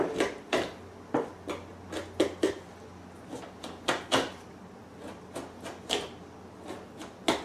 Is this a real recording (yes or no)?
yes